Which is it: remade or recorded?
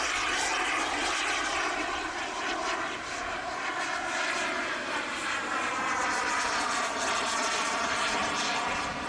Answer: recorded